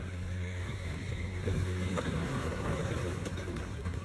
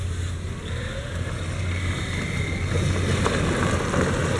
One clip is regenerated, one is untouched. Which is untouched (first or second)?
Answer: second